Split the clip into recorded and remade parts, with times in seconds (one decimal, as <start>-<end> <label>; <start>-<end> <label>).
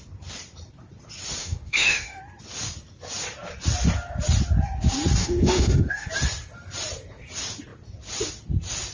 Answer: 0.0-1.4 recorded; 1.4-2.2 remade; 2.2-5.2 recorded; 5.2-6.1 remade; 6.1-8.9 recorded